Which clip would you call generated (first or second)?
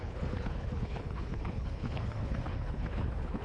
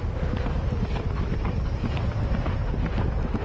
first